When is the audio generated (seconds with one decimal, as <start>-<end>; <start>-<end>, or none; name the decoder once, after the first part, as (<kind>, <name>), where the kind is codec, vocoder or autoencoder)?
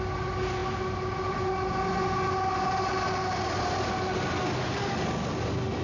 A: none